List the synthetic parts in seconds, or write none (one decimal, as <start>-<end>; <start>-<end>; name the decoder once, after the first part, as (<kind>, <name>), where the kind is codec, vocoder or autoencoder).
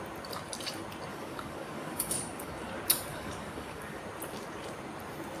1.1-2.7 (codec, DAC); 3.1-4.0